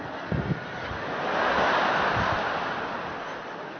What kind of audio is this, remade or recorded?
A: recorded